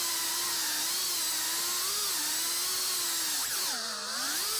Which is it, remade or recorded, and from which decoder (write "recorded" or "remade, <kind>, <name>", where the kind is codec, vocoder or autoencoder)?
recorded